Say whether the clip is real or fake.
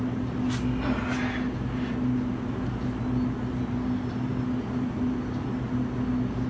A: real